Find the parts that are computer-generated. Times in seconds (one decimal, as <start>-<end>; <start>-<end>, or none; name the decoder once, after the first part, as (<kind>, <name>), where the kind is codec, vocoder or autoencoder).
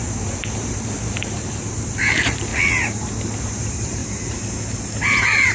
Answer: 0.0-2.5 (vocoder, BigVGAN v2); 3.4-4.0; 5.0-5.5